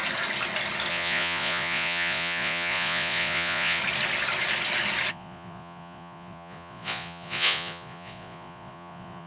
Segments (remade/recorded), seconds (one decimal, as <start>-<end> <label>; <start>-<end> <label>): 0.0-0.9 recorded; 0.9-3.8 remade; 3.8-5.1 recorded; 5.1-9.3 remade